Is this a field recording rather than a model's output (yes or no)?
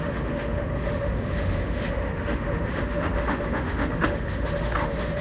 no